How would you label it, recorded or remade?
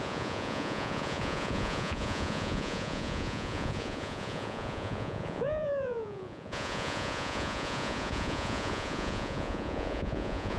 remade